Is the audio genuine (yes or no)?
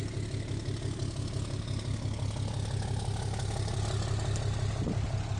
yes